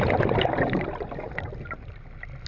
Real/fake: real